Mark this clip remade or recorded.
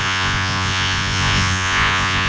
remade